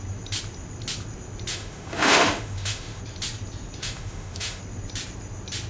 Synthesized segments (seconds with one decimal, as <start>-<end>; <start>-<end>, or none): 1.5-3.0; 3.8-4.6